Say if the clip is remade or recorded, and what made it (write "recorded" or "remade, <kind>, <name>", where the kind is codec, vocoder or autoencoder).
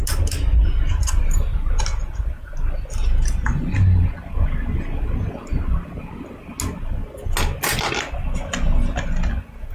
recorded